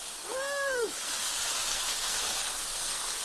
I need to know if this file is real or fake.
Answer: fake